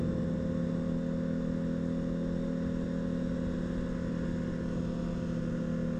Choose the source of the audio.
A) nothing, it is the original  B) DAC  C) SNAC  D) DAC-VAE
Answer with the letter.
A